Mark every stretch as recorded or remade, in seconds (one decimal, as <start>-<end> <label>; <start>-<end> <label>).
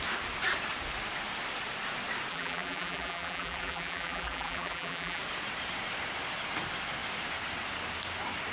0.0-2.3 recorded; 2.3-5.2 remade; 5.2-8.5 recorded